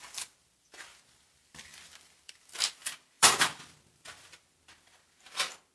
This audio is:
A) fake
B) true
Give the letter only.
A